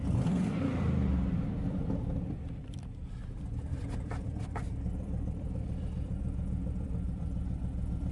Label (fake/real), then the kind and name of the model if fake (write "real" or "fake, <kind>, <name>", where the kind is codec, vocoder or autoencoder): fake, vocoder, BigVGAN v2